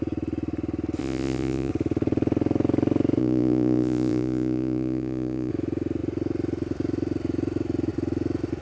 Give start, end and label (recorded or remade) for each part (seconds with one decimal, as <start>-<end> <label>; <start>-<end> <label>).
0.0-1.0 recorded; 1.0-1.7 remade; 1.7-3.2 recorded; 3.2-5.5 remade; 5.5-8.6 recorded